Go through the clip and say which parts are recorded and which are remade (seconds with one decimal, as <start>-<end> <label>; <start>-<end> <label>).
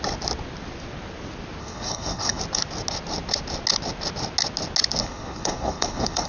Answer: 0.0-1.6 recorded; 1.6-2.4 remade; 2.4-5.0 recorded; 5.0-6.3 remade